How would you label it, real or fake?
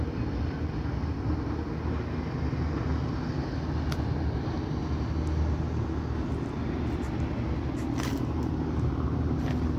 real